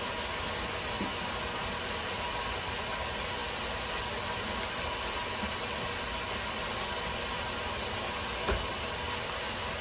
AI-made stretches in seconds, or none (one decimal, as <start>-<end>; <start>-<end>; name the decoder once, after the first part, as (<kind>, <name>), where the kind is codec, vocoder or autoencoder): none